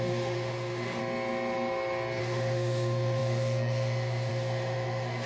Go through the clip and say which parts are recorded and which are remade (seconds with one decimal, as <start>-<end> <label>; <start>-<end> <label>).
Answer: 0.0-1.0 remade; 1.0-2.2 recorded; 2.2-5.3 remade